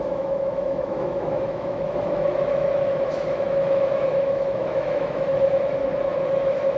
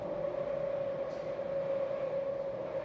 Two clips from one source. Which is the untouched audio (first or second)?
second